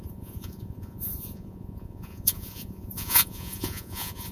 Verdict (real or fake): fake